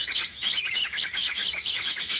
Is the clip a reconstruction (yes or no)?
yes